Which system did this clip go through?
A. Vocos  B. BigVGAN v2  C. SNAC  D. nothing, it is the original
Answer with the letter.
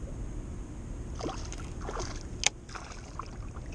D